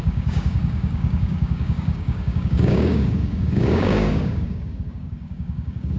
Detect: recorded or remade remade